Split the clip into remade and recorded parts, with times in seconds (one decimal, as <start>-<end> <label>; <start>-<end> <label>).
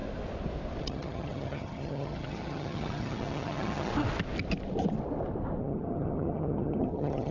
0.0-0.8 recorded; 0.8-3.9 remade; 3.9-5.6 recorded; 5.6-7.3 remade